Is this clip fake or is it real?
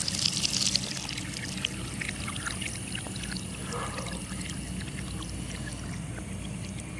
real